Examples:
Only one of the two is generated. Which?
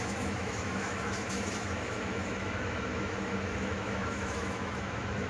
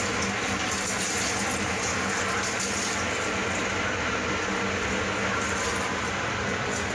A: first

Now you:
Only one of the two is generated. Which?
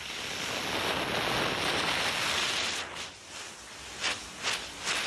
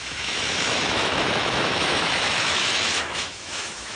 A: second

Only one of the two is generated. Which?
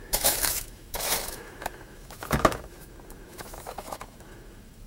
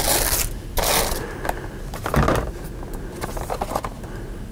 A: first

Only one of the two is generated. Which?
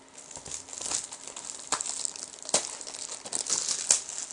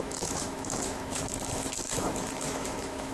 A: second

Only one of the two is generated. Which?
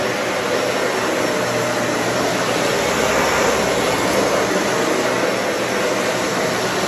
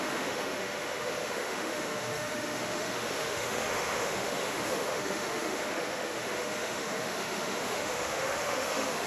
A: second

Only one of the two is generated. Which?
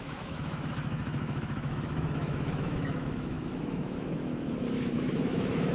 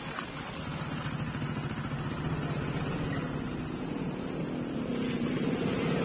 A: first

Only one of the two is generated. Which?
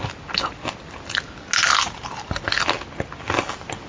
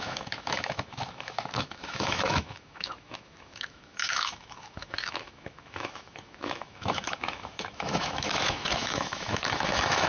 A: second